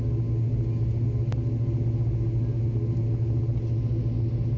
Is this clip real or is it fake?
real